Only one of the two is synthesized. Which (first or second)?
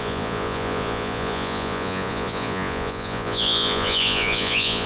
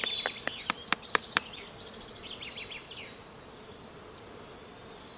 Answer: first